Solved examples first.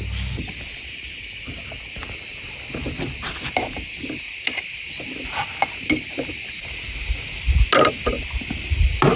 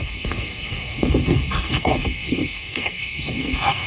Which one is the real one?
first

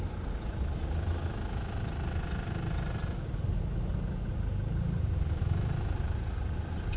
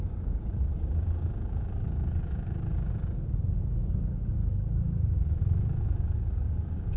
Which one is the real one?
first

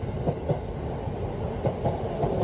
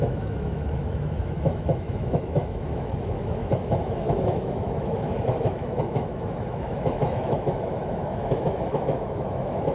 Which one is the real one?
first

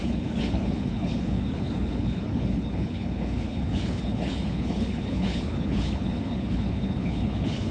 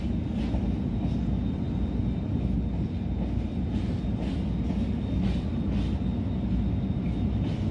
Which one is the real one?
second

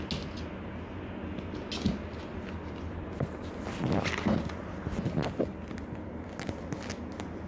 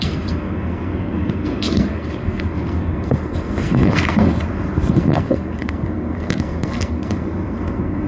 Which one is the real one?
first